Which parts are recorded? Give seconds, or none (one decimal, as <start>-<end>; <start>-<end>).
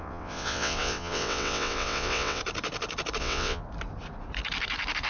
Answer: 2.4-3.2; 3.6-5.1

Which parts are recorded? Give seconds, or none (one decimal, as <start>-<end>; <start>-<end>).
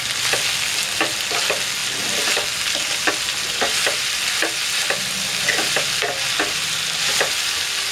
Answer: 0.0-7.9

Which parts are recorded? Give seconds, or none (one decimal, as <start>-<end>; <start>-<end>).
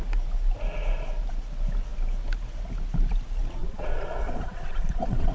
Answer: 0.0-3.6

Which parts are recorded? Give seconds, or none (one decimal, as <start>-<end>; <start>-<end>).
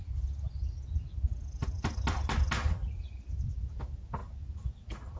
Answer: 0.0-5.2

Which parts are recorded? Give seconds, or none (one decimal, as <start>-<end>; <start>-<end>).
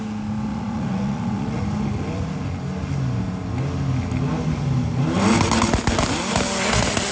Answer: 0.0-0.5; 1.6-7.1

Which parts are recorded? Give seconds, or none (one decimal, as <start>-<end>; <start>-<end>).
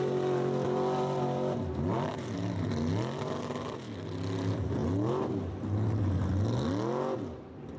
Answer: 0.0-7.8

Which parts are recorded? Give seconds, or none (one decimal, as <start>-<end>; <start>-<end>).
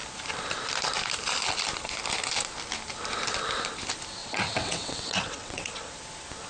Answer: 0.0-4.2; 5.9-6.5